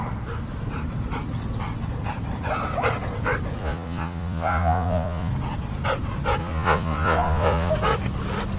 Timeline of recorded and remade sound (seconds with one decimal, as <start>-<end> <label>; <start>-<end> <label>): 0.0-3.6 recorded; 3.6-5.3 remade; 5.3-6.4 recorded; 6.4-7.7 remade; 7.7-8.6 recorded